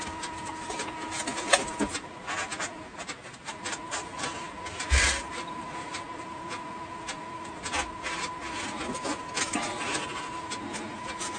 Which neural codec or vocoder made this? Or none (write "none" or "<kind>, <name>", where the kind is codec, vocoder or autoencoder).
none